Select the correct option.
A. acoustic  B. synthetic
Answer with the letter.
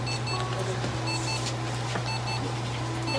A